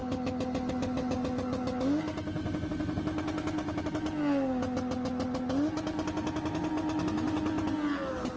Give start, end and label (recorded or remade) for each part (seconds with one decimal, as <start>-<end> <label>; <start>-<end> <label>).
0.0-8.4 recorded